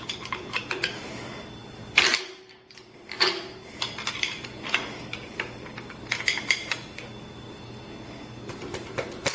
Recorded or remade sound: recorded